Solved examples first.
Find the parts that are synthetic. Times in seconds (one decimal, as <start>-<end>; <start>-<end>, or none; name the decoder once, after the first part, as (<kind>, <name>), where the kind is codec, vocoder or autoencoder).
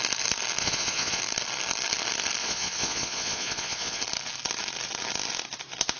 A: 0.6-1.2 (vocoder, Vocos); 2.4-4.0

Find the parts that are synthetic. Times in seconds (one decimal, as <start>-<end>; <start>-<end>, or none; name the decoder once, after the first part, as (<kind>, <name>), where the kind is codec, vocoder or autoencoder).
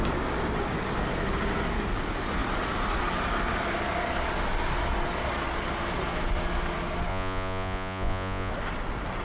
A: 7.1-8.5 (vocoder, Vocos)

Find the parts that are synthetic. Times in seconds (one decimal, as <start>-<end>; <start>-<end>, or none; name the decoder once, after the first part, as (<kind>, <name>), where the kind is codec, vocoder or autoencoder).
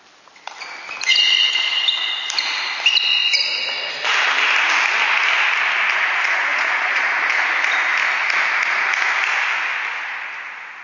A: 6.5-7.3 (vocoder, Vocos)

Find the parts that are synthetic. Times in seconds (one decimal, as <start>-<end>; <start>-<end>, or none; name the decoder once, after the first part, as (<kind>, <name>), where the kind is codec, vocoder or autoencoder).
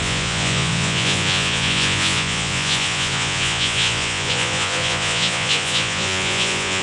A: 0.0-6.8 (vocoder, Vocos)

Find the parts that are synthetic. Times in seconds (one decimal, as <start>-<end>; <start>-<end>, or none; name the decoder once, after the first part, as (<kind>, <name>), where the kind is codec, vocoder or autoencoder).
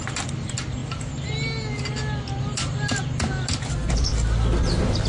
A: none